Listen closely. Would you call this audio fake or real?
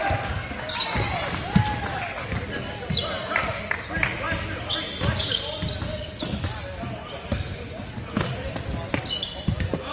real